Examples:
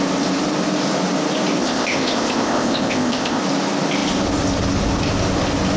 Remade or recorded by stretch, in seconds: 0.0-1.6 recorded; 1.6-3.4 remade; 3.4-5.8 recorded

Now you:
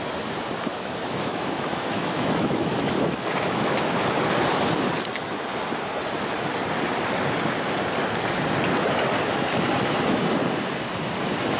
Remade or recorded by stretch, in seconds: 0.0-0.7 recorded; 0.7-4.2 remade; 4.2-11.6 recorded

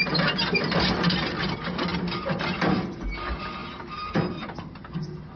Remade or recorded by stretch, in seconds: 0.0-5.4 recorded